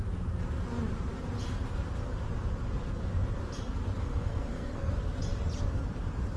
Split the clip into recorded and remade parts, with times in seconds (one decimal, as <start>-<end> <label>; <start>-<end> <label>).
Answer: 0.0-4.0 recorded; 4.0-4.9 remade; 4.9-6.4 recorded